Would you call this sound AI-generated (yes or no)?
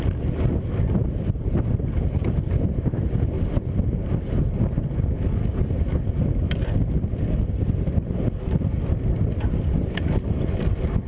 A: no